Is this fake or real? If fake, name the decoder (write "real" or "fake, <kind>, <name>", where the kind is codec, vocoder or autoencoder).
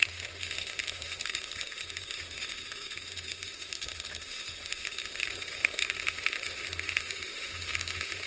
fake, autoencoder, DAC-VAE